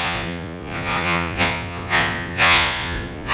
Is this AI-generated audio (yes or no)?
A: yes